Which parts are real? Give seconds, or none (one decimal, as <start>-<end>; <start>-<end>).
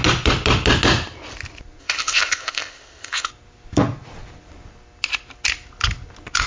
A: 0.0-1.8; 3.3-6.5